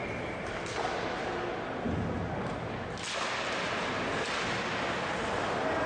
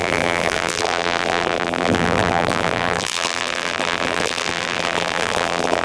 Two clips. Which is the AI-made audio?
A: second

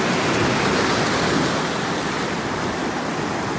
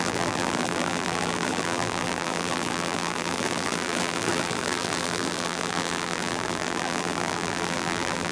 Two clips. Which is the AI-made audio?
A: second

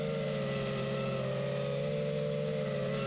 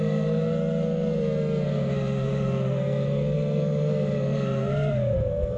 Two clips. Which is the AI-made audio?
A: second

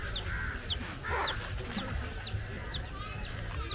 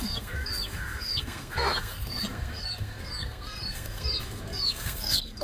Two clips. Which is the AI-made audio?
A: second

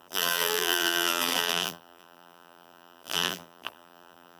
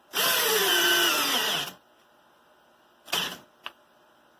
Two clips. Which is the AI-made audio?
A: first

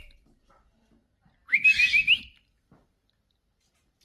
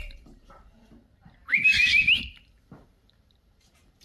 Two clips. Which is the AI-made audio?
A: second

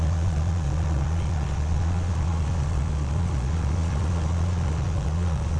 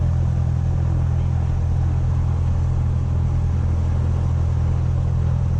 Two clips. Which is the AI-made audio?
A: first